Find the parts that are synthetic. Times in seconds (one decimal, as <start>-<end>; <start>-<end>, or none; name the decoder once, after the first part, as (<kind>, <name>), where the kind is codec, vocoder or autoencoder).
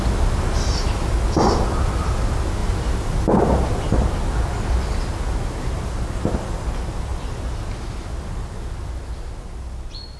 none